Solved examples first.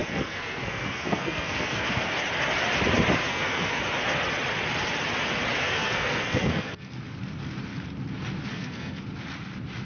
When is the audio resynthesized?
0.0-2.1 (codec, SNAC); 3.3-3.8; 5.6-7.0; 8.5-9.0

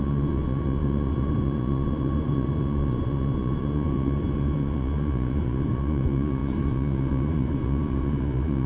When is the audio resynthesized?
0.0-8.7 (vocoder, Vocos)

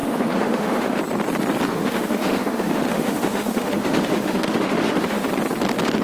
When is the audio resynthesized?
0.0-1.0 (autoencoder, DAC-VAE); 1.7-5.3

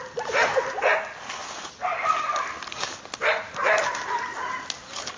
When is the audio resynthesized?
none

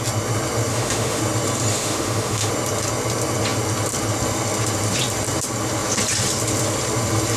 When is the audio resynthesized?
0.7-1.2 (autoencoder, DAC-VAE); 1.7-2.5